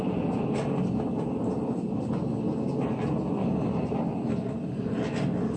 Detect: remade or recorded recorded